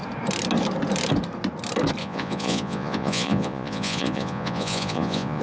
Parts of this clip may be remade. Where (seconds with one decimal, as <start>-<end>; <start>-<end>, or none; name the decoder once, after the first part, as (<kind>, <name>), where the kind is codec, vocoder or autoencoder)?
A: 2.0-5.4 (vocoder, Vocos)